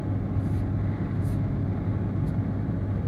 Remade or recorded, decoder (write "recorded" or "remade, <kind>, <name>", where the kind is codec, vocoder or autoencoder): recorded